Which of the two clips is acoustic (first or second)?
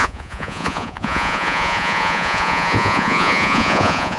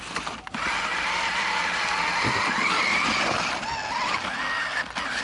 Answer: second